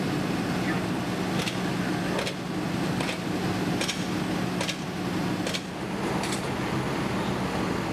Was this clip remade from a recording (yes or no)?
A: no